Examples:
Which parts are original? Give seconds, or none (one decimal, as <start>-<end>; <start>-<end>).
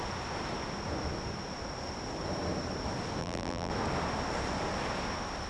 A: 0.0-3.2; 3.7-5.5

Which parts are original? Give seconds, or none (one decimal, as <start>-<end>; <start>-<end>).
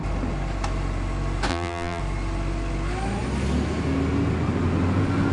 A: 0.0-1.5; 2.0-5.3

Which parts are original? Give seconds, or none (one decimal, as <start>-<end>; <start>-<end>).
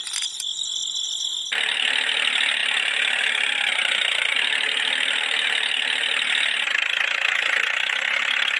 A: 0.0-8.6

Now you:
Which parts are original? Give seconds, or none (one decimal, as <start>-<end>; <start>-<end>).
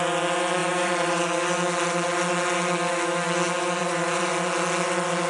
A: 0.0-0.6; 1.5-3.8; 4.3-5.3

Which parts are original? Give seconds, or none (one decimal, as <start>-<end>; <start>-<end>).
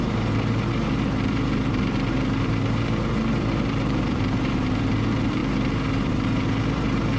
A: none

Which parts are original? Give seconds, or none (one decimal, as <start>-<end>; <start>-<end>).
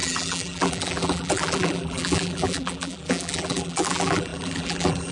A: none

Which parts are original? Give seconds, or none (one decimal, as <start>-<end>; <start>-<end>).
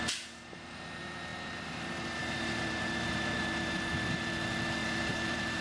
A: 0.0-2.2; 4.3-4.8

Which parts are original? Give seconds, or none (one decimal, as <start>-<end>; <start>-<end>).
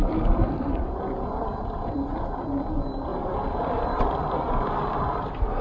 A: none